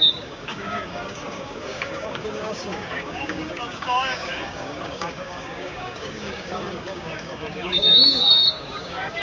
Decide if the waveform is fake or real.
fake